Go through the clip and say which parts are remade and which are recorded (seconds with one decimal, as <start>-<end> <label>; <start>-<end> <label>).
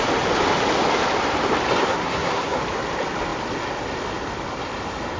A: 0.0-1.8 recorded; 1.8-2.6 remade; 2.6-5.2 recorded